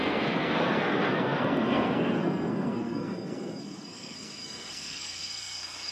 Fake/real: fake